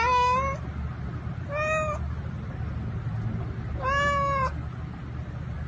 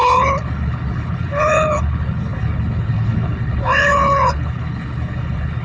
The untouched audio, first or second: first